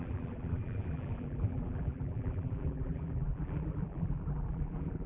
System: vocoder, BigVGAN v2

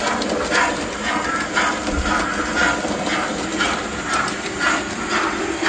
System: none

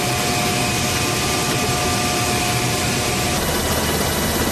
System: none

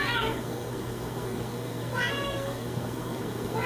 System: codec, SNAC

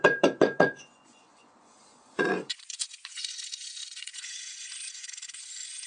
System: vocoder, Vocos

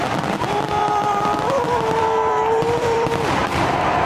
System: vocoder, BigVGAN v2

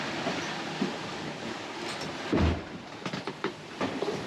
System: none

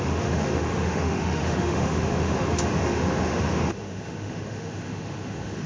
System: autoencoder, DAC-VAE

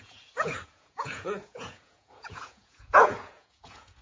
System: vocoder, Vocos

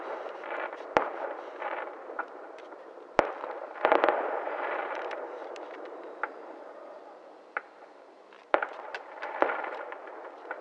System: vocoder, BigVGAN v2